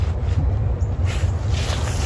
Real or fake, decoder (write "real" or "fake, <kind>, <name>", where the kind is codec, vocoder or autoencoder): real